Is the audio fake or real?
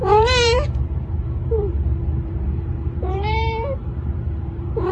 fake